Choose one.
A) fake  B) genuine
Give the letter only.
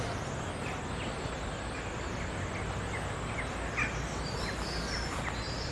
B